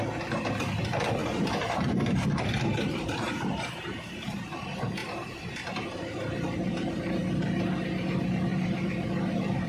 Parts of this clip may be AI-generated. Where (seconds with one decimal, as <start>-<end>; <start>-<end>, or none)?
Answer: 1.2-4.1; 5.0-5.5; 8.5-9.7